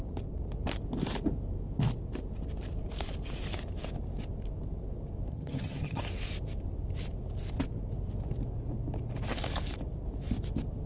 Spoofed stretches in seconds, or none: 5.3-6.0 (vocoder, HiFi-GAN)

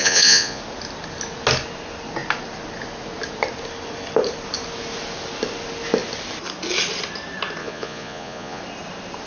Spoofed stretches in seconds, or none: 0.0-0.6 (vocoder, Vocos); 7.6-8.6

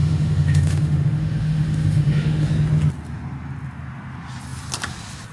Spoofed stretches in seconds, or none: 0.0-2.5 (autoencoder, DAC-VAE)

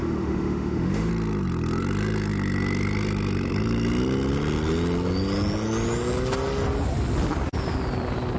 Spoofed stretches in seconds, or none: 0.0-1.1 (autoencoder, DAC-VAE)

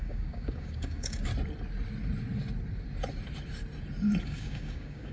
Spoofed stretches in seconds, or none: 0.0-1.3 (codec, DAC); 4.2-5.1

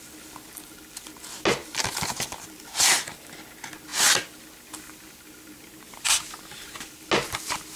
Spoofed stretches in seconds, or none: none

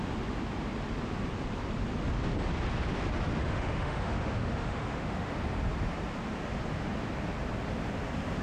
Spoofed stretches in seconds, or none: 3.4-5.3 (autoencoder, DAC-VAE)